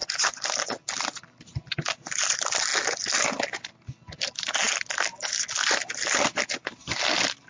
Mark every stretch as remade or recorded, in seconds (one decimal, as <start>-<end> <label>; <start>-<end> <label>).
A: 0.0-7.5 recorded